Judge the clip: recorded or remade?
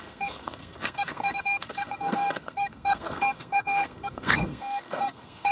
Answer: remade